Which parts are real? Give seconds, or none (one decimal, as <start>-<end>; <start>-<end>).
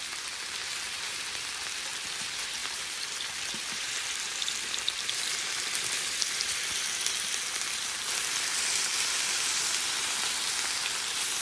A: 0.0-2.6; 6.8-8.9; 10.8-11.4